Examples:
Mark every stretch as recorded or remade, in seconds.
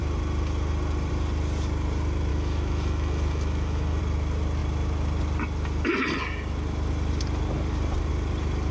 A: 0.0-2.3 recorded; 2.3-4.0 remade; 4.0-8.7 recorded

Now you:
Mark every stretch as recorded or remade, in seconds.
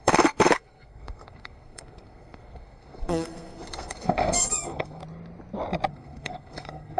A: 0.0-5.0 remade; 5.0-5.9 recorded; 5.9-7.0 remade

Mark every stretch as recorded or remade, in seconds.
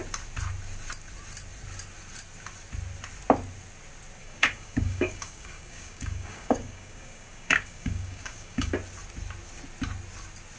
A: 0.0-4.2 recorded; 4.2-8.7 remade; 8.7-10.6 recorded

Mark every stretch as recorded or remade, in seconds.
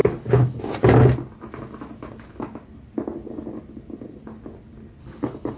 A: 0.0-0.6 remade; 0.6-5.0 recorded; 5.0-5.6 remade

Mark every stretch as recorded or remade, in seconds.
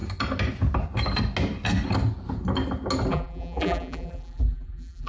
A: 0.0-3.1 recorded; 3.1-5.1 remade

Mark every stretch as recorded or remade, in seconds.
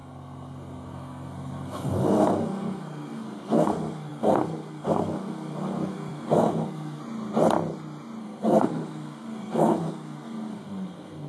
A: 0.0-7.0 remade; 7.0-8.2 recorded; 8.2-11.3 remade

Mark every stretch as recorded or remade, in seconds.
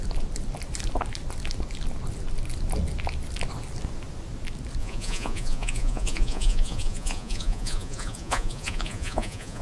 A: 0.0-4.8 recorded; 4.8-9.6 remade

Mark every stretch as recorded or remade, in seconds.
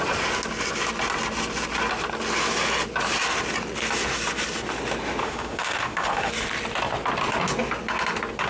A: 0.0-5.2 recorded; 5.2-6.3 remade; 6.3-8.5 recorded